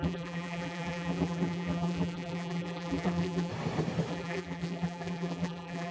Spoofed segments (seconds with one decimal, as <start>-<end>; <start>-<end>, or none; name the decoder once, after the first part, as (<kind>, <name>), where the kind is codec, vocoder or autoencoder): 0.0-3.5 (vocoder, BigVGAN v2); 4.1-5.9